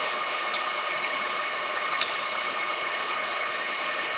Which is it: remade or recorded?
remade